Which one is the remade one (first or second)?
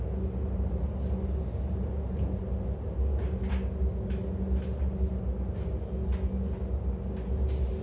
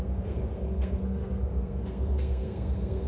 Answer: second